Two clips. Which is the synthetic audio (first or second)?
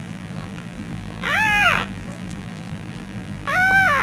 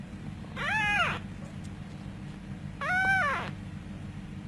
first